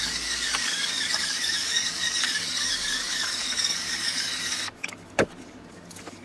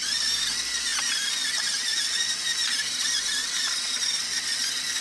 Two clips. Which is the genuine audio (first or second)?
second